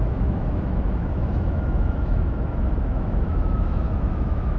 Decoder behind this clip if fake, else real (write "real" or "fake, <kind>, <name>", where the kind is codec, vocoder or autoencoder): fake, autoencoder, DAC-VAE